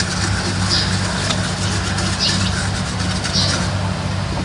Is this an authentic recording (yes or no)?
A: yes